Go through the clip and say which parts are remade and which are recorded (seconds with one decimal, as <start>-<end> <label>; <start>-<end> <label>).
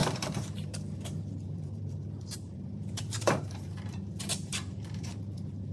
0.0-5.7 remade